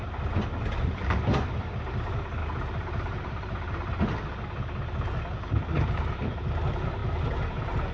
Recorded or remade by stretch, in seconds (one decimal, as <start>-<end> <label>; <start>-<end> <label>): 0.0-2.4 recorded; 2.4-4.0 remade; 4.0-7.9 recorded